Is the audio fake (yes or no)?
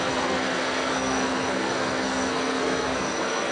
yes